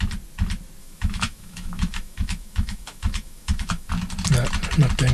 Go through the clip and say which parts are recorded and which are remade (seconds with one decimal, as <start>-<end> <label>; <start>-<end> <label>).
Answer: 0.0-0.8 recorded; 0.8-3.9 remade; 3.9-5.1 recorded